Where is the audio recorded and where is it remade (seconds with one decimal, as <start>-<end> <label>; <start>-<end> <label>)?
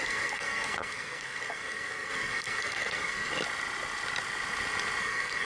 0.0-3.3 remade; 3.3-5.0 recorded; 5.0-5.4 remade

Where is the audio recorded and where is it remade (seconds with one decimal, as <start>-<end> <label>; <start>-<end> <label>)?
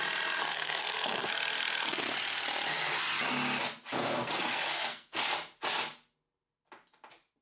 0.0-0.5 recorded; 0.5-1.3 remade; 1.3-4.2 recorded; 4.2-5.2 remade; 5.2-7.4 recorded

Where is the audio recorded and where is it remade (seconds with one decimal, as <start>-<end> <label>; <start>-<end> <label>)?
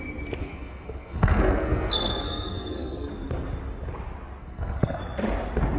0.0-0.4 recorded; 0.4-3.1 remade; 3.1-4.4 recorded; 4.4-5.0 remade; 5.0-5.8 recorded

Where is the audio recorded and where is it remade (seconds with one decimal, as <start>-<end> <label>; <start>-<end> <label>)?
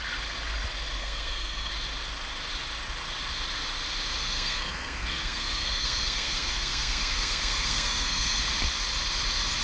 0.0-1.0 recorded; 1.0-1.7 remade; 1.7-4.2 recorded; 4.2-8.4 remade; 8.4-9.6 recorded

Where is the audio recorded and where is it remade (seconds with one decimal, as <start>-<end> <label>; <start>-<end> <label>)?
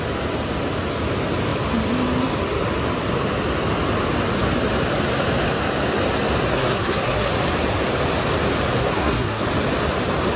0.0-6.5 recorded; 6.5-7.3 remade; 7.3-8.8 recorded; 8.8-9.4 remade; 9.4-10.4 recorded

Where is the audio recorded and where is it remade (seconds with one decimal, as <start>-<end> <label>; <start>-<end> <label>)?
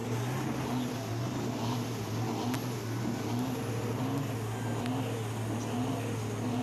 0.0-6.6 recorded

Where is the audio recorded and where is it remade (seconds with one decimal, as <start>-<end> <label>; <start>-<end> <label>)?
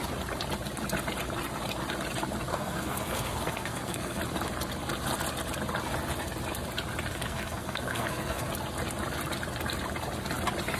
0.0-2.5 recorded; 2.5-4.2 remade; 4.2-7.1 recorded; 7.1-8.5 remade; 8.5-10.8 recorded